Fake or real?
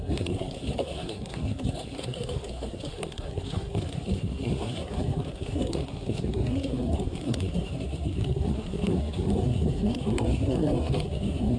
fake